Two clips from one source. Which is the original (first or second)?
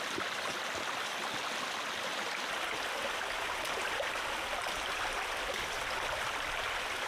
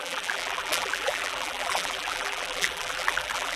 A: first